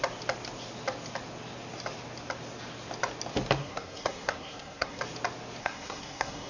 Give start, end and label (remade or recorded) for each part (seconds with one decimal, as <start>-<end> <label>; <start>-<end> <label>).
0.0-3.6 recorded; 3.6-5.0 remade; 5.0-5.6 recorded; 5.6-6.5 remade